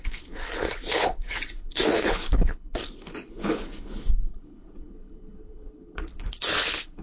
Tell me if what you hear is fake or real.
fake